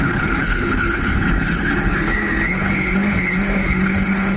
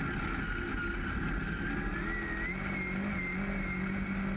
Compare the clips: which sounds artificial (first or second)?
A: first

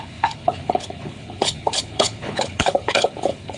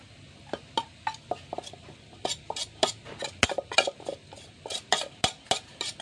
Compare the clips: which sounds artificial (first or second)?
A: first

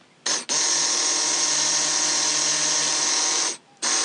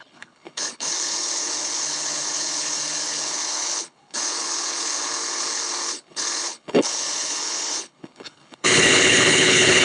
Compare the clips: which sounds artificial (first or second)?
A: second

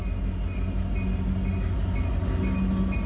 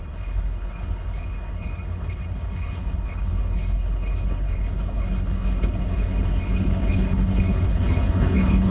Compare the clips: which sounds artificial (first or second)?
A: second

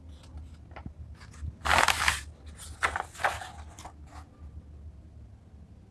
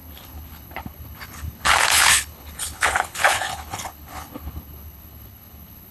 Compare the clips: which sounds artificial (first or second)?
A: second